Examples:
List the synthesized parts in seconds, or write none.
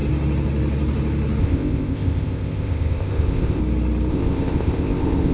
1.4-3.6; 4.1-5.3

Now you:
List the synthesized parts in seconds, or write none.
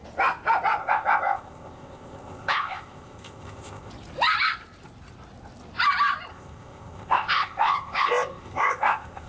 0.8-3.9; 6.3-9.3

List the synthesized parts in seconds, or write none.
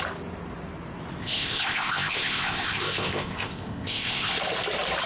1.2-4.3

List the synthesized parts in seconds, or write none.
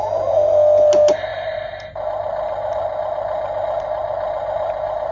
none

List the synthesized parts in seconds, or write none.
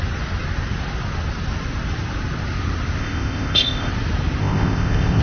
3.0-3.9; 4.4-5.2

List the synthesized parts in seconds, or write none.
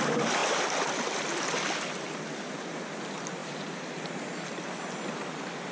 none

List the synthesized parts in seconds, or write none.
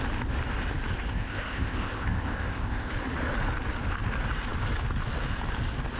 1.1-2.9